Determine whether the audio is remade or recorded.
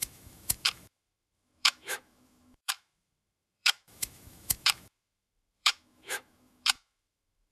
remade